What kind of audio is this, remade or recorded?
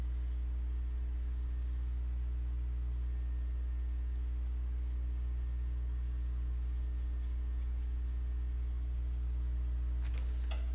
recorded